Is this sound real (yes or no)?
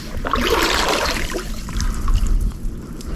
no